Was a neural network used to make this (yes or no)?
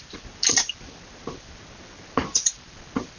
no